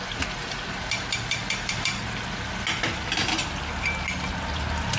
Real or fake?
real